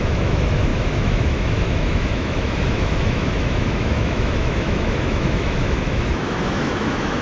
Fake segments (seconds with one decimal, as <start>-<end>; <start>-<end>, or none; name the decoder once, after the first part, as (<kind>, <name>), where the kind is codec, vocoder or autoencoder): 0.0-7.2 (autoencoder, DAC-VAE)